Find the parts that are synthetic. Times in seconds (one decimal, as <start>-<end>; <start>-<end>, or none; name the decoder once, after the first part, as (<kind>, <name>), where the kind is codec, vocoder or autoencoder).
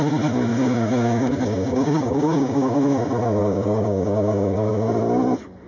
0.5-2.8 (codec, DAC); 3.4-4.7